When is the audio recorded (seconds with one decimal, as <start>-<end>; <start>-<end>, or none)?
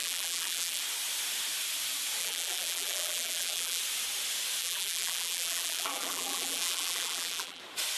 0.8-2.2; 3.8-4.6; 7.6-8.0